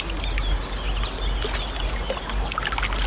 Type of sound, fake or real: real